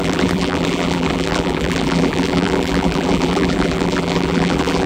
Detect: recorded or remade remade